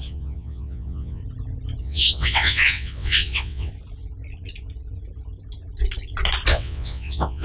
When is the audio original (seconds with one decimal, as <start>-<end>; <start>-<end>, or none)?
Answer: 1.2-1.8; 3.7-6.5